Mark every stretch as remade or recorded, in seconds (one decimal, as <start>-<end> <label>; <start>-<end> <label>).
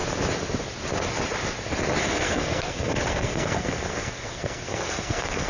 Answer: 0.0-2.0 recorded; 2.0-5.5 remade